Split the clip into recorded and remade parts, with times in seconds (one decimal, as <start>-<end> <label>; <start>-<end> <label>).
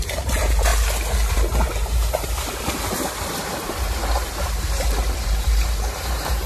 0.0-0.7 remade; 0.7-1.3 recorded; 1.3-6.5 remade